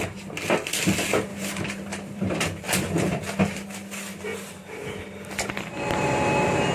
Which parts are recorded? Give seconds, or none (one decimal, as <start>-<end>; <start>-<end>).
0.0-1.3; 3.4-4.3

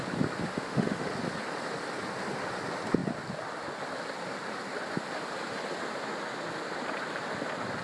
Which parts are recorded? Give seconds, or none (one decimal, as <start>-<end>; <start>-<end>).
0.0-0.5; 1.1-7.8

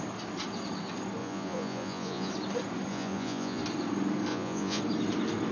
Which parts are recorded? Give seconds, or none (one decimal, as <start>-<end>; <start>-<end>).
0.0-1.2; 2.3-2.9; 3.6-4.3; 4.8-5.5